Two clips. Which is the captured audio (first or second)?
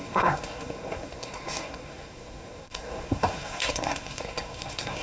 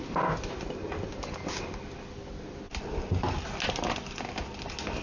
second